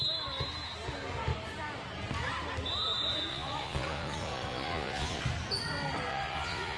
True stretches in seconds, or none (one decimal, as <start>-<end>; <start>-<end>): 0.0-3.3; 5.2-6.1